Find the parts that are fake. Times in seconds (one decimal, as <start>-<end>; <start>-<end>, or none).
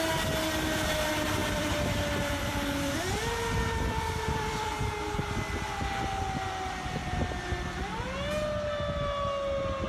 1.4-4.7; 7.0-8.0